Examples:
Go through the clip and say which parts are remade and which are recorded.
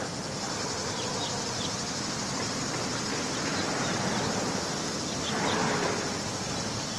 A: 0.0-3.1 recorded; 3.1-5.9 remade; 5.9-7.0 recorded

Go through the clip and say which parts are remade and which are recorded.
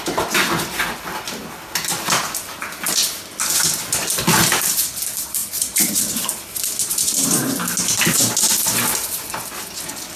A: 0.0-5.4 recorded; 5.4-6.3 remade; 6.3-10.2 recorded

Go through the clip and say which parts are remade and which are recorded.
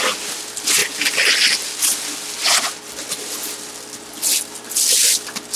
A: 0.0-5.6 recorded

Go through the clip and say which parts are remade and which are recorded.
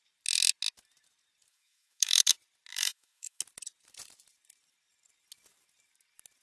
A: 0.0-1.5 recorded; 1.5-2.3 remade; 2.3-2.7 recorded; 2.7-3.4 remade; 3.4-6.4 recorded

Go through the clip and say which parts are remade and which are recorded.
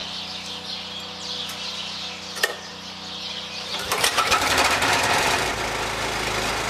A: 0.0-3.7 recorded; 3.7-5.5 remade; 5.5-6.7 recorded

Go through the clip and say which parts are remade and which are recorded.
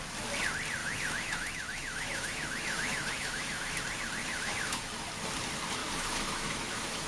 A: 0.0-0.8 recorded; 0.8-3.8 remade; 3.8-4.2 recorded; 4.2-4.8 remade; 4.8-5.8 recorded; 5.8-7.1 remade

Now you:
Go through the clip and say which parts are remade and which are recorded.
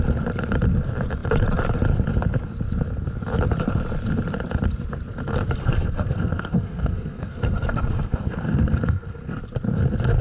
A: 0.0-5.6 recorded; 5.6-9.4 remade; 9.4-10.2 recorded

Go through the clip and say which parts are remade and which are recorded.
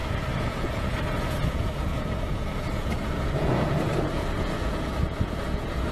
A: 0.0-5.9 remade